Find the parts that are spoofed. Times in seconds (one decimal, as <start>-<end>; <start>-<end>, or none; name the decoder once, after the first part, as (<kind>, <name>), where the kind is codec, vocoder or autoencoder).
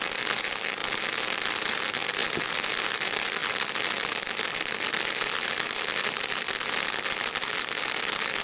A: none